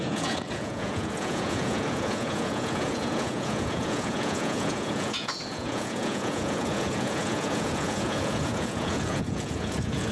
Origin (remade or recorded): remade